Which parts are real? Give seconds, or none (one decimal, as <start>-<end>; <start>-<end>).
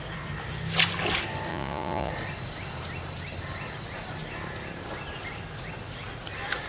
0.0-1.5; 2.1-6.7